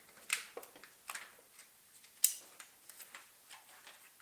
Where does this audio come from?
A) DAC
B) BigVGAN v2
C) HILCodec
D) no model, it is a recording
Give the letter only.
D